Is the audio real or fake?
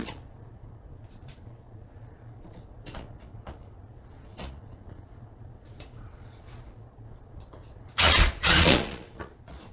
fake